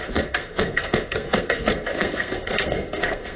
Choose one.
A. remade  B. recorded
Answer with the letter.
A